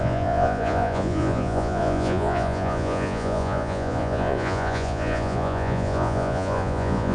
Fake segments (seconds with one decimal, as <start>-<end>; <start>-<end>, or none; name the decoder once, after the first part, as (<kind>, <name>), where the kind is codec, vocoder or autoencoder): 0.0-7.1 (vocoder, Vocos)